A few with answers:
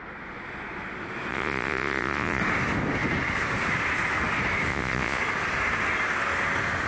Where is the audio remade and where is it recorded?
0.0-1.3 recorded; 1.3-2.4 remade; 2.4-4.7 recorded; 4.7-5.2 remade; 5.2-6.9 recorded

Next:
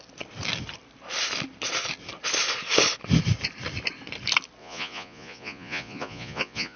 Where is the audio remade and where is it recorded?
0.0-4.6 recorded; 4.6-6.8 remade

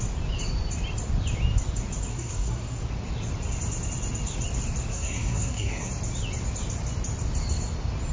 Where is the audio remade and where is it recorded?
0.0-2.1 recorded; 2.1-2.8 remade; 2.8-4.9 recorded; 4.9-5.9 remade; 5.9-8.1 recorded

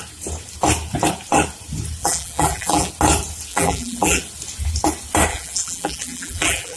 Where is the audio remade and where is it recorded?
0.0-2.0 recorded; 2.0-2.9 remade; 2.9-3.5 recorded; 3.5-4.2 remade; 4.2-5.3 recorded; 5.3-6.8 remade

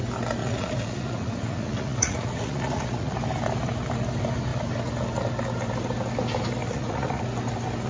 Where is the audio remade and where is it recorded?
0.0-0.4 recorded; 0.4-3.1 remade; 3.1-6.6 recorded; 6.6-7.2 remade; 7.2-7.9 recorded

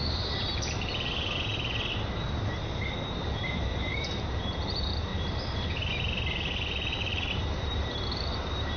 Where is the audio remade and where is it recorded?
0.0-1.5 remade; 1.5-3.2 recorded; 3.2-5.1 remade; 5.1-7.4 recorded; 7.4-8.8 remade

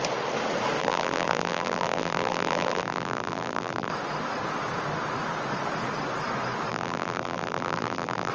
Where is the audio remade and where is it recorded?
0.0-0.8 recorded; 0.8-3.9 remade; 3.9-6.7 recorded; 6.7-8.3 remade

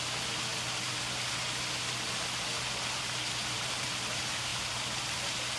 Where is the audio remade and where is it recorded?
0.0-5.6 recorded